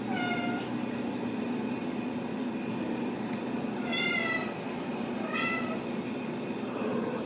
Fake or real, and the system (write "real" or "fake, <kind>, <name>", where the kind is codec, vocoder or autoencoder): fake, vocoder, BigVGAN v2